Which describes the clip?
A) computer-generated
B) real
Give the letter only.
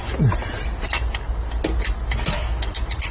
B